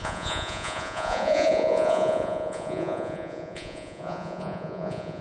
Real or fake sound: fake